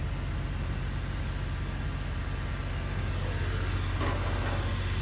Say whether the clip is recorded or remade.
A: recorded